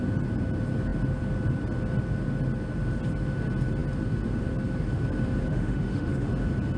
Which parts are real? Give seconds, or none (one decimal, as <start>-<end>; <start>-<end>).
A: 0.0-5.5; 6.3-6.8